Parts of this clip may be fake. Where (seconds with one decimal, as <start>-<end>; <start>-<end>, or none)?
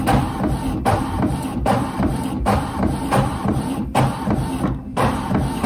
1.5-4.0; 4.9-5.7